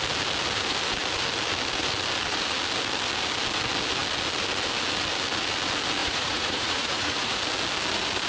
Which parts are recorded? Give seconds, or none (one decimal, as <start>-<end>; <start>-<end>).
0.0-6.0; 7.4-8.3